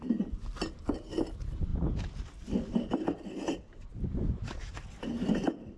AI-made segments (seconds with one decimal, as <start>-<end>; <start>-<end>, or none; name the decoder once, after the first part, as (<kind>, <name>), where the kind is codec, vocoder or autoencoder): none